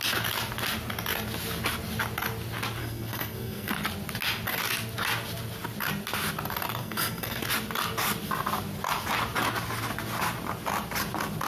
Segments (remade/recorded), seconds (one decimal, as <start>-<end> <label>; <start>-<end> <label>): 0.0-2.8 recorded; 2.8-3.7 remade; 3.7-6.8 recorded; 6.8-7.4 remade; 7.4-11.5 recorded